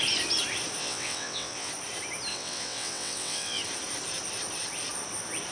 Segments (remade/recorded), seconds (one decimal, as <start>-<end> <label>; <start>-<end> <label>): 0.0-0.8 recorded; 0.8-1.7 remade; 1.7-2.3 recorded; 2.3-3.6 remade; 3.6-5.5 recorded